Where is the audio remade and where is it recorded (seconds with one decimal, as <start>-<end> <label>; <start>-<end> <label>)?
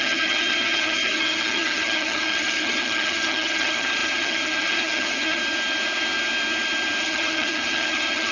0.0-5.4 remade; 5.4-7.0 recorded; 7.0-8.3 remade